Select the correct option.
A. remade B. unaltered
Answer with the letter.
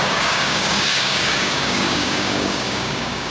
A